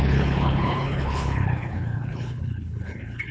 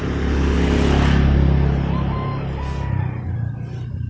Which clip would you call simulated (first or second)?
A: first